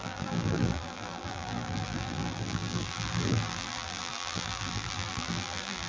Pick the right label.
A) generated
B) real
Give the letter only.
A